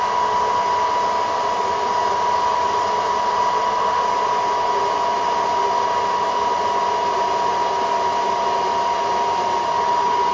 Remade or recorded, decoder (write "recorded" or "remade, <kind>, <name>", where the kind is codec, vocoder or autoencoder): recorded